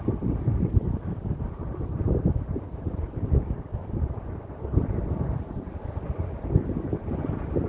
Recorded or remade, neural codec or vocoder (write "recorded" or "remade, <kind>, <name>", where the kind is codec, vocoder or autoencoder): recorded